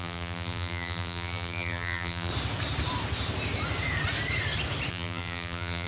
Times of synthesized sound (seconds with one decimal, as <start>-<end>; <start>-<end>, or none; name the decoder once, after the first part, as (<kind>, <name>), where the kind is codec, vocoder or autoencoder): 0.0-2.3 (vocoder, BigVGAN v2); 4.9-5.9